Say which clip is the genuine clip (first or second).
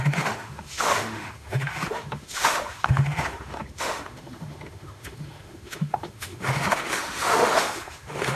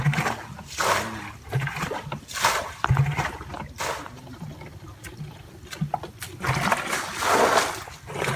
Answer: second